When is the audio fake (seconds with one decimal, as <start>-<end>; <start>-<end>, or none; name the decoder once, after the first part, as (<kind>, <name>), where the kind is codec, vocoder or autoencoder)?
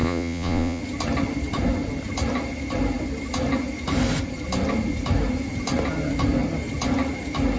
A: 0.0-0.8 (vocoder, Vocos)